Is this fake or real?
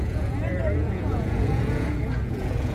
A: fake